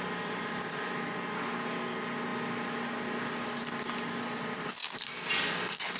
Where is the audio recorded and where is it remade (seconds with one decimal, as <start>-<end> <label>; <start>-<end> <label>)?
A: 0.0-6.0 recorded